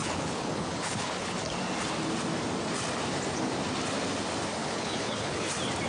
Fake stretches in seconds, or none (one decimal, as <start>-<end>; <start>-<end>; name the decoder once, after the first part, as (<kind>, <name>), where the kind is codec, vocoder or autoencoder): 0.0-1.4 (codec, HILCodec); 4.6-5.5